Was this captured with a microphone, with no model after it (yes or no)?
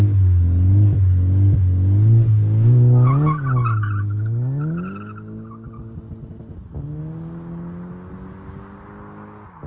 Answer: yes